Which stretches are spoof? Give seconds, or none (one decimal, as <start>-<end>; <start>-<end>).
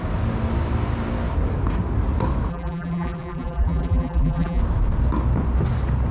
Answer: 2.5-4.6